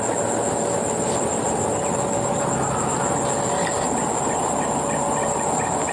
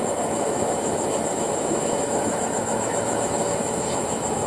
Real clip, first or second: first